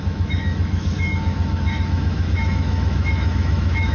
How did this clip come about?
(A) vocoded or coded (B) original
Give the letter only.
A